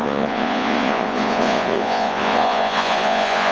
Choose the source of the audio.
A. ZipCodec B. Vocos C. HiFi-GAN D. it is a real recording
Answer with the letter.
B